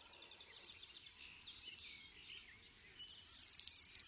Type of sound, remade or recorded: recorded